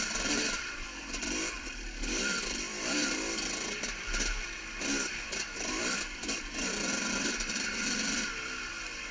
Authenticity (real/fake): fake